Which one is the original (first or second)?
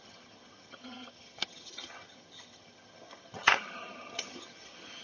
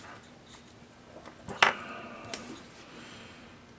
second